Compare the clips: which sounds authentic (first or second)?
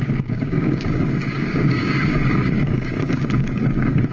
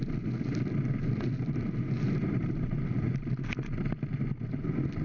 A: second